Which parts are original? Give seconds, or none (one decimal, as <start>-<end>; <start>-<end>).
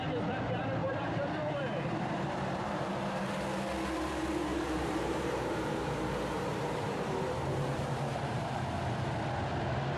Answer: 0.0-0.8; 3.2-4.5; 8.5-10.0